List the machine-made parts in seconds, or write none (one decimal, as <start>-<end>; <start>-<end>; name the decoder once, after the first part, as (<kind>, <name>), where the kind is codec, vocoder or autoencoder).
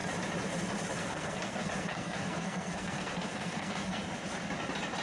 1.0-4.0 (codec, SNAC)